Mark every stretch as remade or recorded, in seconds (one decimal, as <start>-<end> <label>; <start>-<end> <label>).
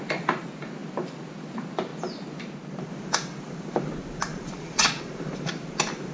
0.0-4.3 recorded; 4.3-5.0 remade; 5.0-6.1 recorded